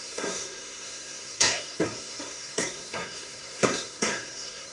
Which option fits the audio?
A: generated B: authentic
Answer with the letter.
A